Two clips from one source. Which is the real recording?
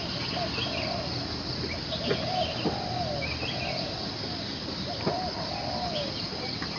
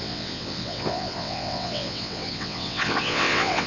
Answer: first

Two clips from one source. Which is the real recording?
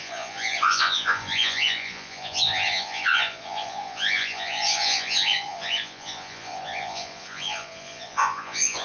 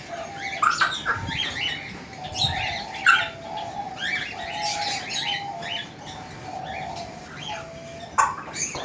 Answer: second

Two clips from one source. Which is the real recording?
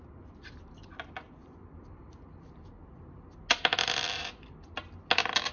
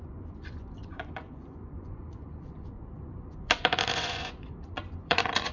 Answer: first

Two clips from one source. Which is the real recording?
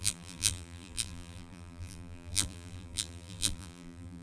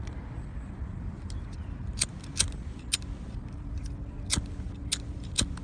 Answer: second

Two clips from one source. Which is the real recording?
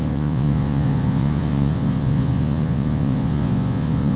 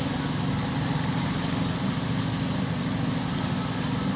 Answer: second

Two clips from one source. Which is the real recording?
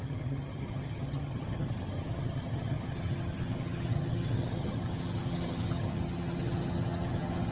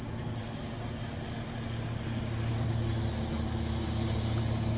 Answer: second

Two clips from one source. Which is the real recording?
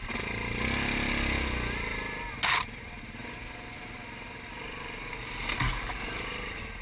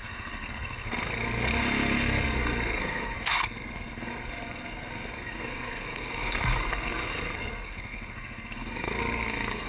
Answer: first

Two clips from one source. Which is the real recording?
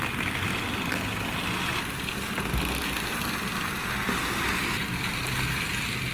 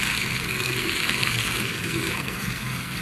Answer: first